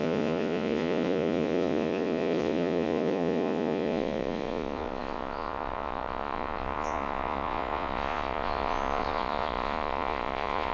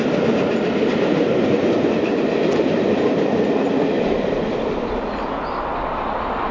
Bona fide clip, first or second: second